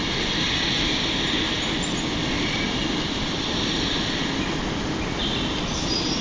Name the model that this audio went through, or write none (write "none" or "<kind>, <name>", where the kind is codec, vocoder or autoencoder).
vocoder, BigVGAN v2